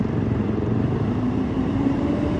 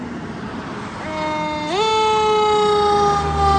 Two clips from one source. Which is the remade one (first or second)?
first